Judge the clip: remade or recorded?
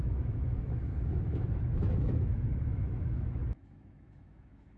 remade